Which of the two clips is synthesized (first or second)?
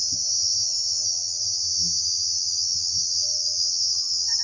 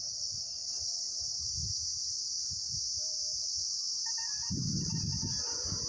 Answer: first